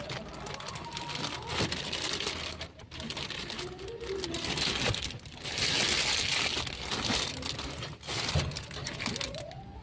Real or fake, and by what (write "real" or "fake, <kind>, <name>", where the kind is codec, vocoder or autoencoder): real